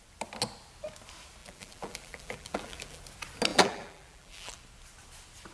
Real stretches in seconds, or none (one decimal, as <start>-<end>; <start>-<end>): 0.0-1.4; 3.0-3.5; 4.6-5.5